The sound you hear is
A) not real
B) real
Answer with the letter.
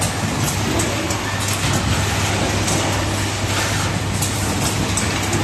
B